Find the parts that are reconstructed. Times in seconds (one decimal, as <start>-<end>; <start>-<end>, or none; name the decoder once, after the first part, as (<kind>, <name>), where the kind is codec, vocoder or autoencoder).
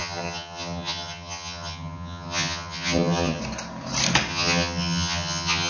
0.0-3.4 (vocoder, HiFi-GAN); 4.3-5.7